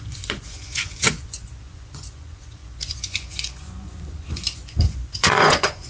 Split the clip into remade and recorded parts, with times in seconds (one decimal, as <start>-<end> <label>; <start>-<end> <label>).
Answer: 0.0-5.9 remade